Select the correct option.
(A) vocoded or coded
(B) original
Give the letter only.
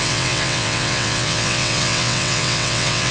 A